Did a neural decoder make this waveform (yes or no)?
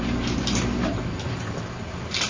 no